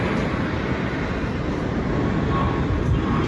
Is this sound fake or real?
real